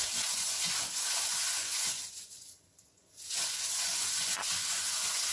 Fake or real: fake